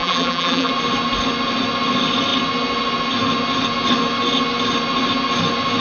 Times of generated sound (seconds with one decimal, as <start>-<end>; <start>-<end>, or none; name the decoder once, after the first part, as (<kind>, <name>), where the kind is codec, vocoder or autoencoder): 0.0-0.7 (vocoder, BigVGAN v2)